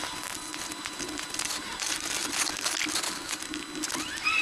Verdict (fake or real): real